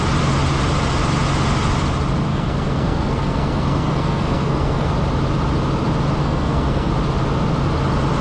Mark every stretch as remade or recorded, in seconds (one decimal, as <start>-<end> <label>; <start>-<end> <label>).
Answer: 0.0-2.3 recorded; 2.3-4.9 remade; 4.9-6.2 recorded; 6.2-6.9 remade; 6.9-8.2 recorded